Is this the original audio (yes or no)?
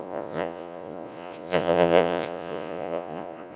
no